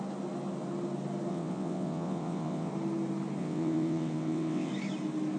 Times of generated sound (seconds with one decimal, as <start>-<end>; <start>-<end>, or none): 1.3-2.7; 3.4-4.7